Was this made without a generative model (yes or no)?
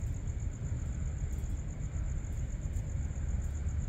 yes